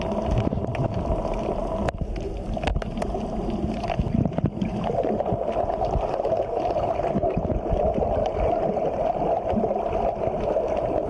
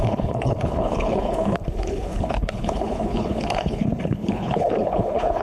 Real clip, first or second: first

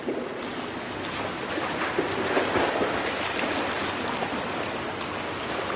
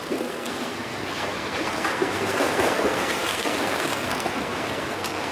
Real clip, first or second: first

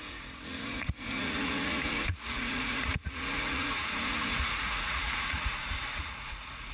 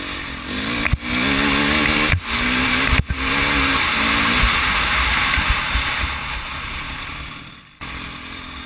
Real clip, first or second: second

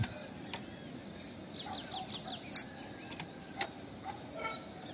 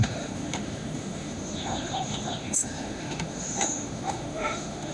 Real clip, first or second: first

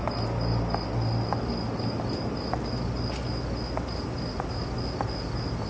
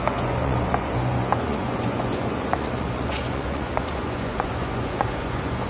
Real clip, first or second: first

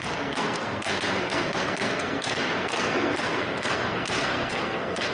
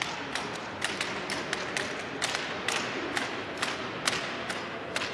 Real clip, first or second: second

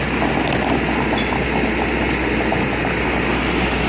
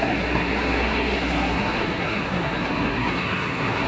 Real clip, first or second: first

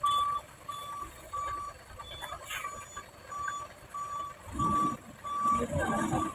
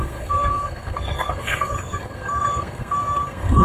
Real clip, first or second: first